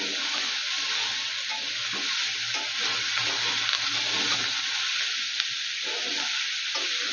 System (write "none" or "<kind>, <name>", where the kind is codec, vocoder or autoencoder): none